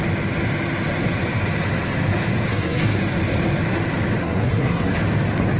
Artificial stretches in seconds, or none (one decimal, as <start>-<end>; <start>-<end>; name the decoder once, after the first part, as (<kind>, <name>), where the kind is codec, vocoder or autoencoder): 2.5-3.0 (codec, SNAC); 4.2-4.9